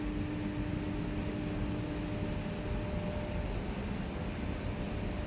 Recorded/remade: recorded